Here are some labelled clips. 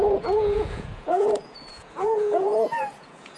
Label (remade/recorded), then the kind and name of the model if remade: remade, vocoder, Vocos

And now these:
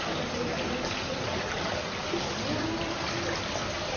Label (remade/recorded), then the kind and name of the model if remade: recorded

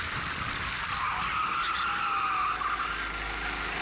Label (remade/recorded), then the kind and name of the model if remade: recorded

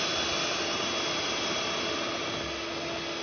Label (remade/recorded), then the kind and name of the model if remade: recorded